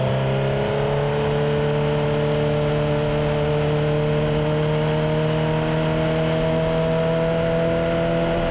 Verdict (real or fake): real